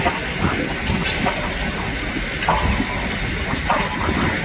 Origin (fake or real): real